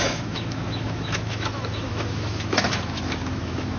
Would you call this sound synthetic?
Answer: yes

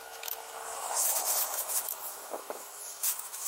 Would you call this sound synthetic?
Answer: yes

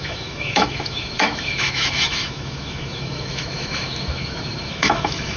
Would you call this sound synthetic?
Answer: yes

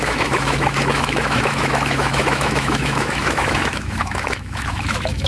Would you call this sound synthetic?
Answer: yes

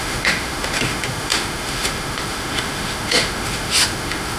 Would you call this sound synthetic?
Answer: yes